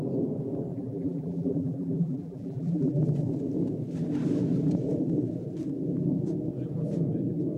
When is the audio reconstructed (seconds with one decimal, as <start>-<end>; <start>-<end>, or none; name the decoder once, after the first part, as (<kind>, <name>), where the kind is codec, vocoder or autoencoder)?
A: 0.7-3.0 (vocoder, BigVGAN v2)